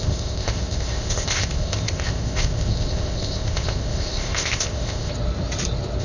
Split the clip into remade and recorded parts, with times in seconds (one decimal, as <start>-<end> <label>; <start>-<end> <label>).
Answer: 0.0-5.1 remade; 5.1-6.0 recorded